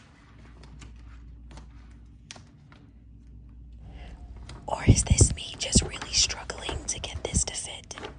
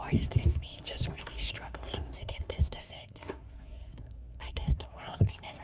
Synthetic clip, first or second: second